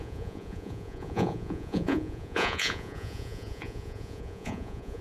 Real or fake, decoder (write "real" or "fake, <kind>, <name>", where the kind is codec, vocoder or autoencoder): fake, vocoder, Vocos